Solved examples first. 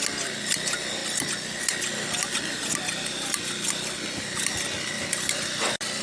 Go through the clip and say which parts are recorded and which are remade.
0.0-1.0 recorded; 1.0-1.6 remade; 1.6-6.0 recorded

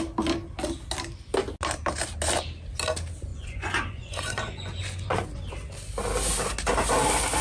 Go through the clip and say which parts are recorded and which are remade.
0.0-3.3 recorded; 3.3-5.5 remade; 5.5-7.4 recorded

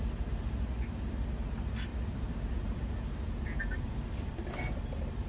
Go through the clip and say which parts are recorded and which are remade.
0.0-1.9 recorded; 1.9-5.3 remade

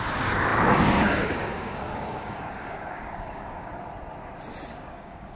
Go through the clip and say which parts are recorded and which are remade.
0.0-3.7 remade; 3.7-4.8 recorded; 4.8-5.4 remade

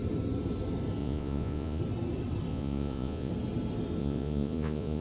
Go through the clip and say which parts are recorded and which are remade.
0.0-1.0 recorded; 1.0-1.8 remade; 1.8-2.5 recorded; 2.5-3.3 remade; 3.3-4.0 recorded; 4.0-5.0 remade

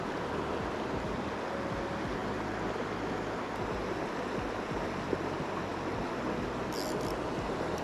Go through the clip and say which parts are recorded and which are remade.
0.0-7.8 recorded

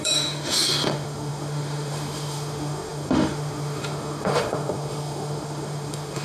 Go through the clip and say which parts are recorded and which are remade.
0.0-6.2 remade

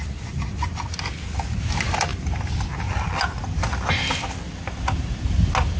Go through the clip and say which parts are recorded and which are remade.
0.0-5.8 recorded